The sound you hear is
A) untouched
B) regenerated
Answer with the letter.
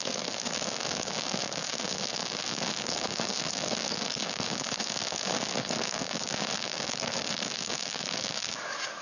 B